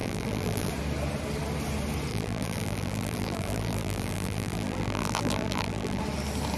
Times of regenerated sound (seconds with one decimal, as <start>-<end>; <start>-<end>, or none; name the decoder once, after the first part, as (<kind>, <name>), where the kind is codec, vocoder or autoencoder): 0.0-0.7 (vocoder, BigVGAN v2); 2.1-6.0